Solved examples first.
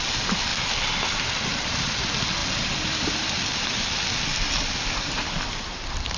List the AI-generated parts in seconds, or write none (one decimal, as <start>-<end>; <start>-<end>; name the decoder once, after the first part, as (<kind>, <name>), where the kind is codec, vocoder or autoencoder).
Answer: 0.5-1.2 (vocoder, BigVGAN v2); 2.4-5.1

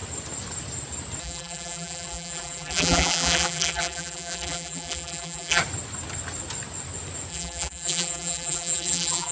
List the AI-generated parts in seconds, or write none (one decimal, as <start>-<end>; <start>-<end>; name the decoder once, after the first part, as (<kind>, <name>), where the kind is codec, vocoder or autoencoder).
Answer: 1.2-5.6 (vocoder, BigVGAN v2); 7.3-9.3

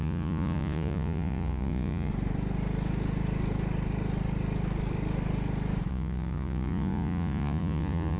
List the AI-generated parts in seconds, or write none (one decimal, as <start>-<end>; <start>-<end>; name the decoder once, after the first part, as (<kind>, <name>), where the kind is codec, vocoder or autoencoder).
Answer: 0.0-2.1 (vocoder, Vocos); 5.9-8.2

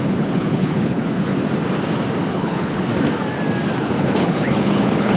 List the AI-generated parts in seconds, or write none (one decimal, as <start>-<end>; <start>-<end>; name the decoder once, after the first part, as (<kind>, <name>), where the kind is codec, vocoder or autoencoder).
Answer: 0.0-1.3 (codec, HILCodec); 2.3-2.9; 3.8-5.2

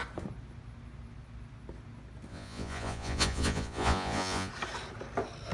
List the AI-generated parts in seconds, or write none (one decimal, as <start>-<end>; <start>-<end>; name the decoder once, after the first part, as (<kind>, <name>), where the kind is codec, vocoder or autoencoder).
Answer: 2.3-4.5 (vocoder, Vocos)

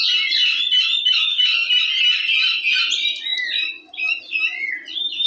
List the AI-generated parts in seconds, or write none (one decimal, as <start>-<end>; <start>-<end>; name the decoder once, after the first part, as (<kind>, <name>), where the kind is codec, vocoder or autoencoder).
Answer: 1.0-1.5 (autoencoder, DAC-VAE)

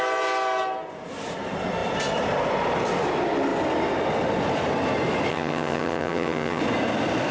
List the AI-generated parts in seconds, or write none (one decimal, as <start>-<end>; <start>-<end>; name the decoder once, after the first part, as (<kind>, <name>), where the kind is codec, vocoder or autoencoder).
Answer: 5.3-6.6 (vocoder, HiFi-GAN)